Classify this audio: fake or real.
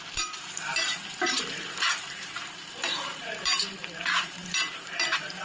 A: fake